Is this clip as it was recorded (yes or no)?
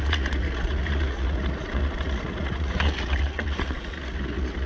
no